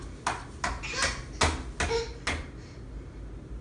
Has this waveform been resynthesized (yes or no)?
no